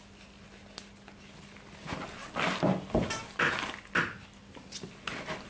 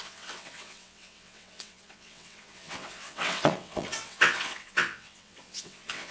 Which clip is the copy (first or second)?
second